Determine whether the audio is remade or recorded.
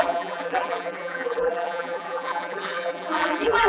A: remade